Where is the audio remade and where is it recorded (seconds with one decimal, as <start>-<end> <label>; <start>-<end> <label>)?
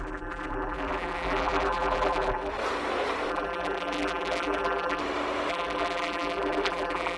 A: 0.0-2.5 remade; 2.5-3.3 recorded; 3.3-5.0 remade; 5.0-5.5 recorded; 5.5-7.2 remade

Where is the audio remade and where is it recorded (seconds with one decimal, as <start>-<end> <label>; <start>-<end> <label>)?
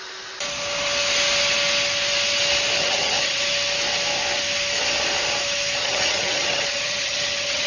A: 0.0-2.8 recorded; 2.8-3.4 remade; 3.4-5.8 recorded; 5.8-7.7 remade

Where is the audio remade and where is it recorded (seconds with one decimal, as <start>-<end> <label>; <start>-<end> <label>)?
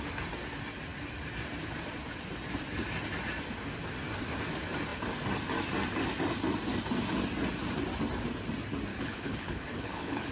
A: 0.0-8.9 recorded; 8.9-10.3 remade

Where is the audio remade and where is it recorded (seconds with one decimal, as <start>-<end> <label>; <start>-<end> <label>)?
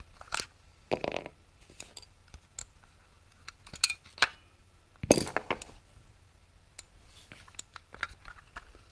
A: 0.0-8.9 recorded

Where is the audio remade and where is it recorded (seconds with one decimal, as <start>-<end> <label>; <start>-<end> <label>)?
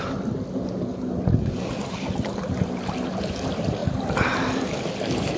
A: 0.0-5.4 recorded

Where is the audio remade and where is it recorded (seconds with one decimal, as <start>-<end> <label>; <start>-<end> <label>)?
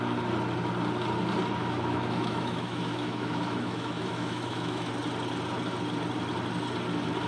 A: 0.0-1.6 recorded; 1.6-4.9 remade; 4.9-7.3 recorded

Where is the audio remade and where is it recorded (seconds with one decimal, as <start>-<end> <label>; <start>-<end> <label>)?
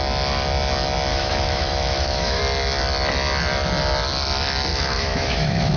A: 0.0-1.1 recorded; 1.1-2.4 remade; 2.4-4.7 recorded; 4.7-5.8 remade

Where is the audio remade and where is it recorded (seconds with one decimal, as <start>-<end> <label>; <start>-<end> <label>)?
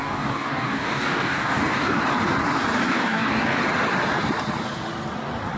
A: 0.0-2.0 remade; 2.0-2.9 recorded; 2.9-3.6 remade; 3.6-5.6 recorded